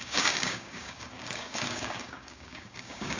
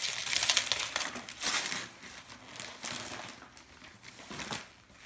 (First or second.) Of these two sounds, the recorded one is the second